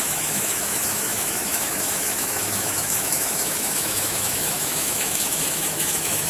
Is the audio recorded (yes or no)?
no